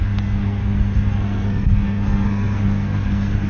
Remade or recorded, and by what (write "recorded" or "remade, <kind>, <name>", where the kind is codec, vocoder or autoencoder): remade, codec, SNAC